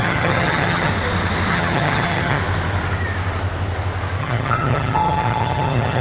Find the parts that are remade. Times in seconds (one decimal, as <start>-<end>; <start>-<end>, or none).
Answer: 0.0-0.9; 1.5-2.4; 4.2-6.0